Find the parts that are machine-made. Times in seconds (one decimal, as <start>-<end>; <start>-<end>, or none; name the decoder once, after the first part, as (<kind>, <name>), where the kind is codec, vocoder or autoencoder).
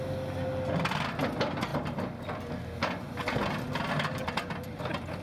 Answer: none